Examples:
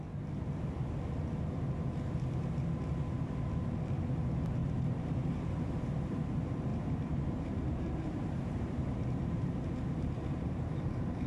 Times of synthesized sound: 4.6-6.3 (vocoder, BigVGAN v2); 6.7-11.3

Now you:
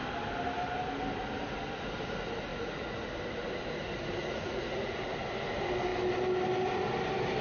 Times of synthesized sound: 2.5-3.0 (vocoder, Vocos); 4.2-5.0

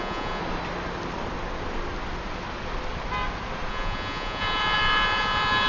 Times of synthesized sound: 0.0-0.4 (vocoder, Vocos); 3.7-5.7

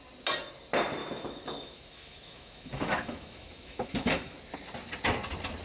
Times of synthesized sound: 1.0-4.4 (autoencoder, DAC-VAE)

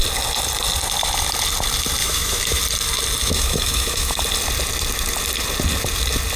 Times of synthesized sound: 2.0-2.6 (autoencoder, DAC-VAE); 3.2-4.2

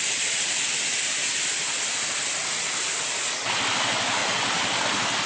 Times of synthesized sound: none

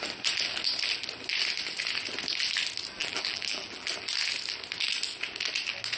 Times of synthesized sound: 3.0-3.9 (vocoder, BigVGAN v2)